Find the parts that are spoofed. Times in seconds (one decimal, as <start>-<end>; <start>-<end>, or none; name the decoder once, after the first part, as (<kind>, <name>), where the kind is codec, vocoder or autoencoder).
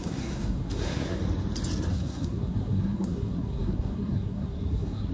0.0-1.2 (codec, SNAC); 1.9-5.1